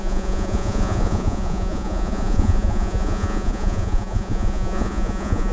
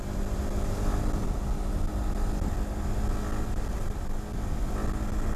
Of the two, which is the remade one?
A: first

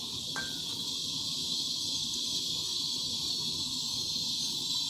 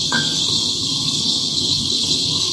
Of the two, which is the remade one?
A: second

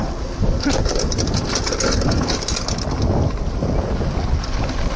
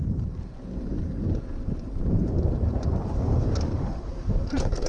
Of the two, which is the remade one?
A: second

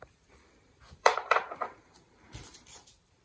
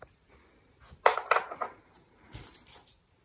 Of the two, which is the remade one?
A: first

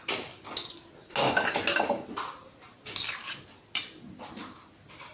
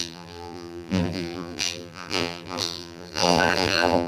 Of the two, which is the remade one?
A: second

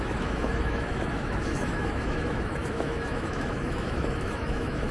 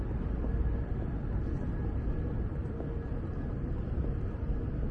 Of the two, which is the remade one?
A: first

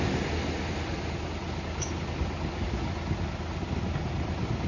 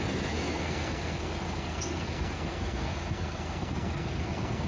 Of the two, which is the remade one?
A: second